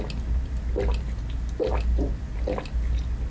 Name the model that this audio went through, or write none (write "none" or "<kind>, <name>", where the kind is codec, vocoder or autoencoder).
none